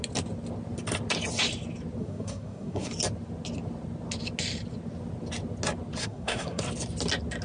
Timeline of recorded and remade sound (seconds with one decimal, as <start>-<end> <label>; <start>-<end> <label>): 0.0-2.0 recorded; 2.0-2.9 remade; 2.9-6.0 recorded; 6.0-6.6 remade; 6.6-7.4 recorded